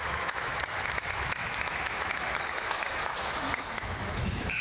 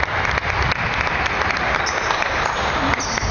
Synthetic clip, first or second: first